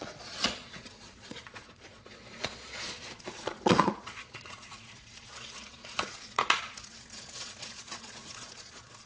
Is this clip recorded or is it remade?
remade